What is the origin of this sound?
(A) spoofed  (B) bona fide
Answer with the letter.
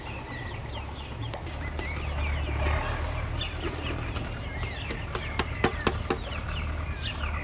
B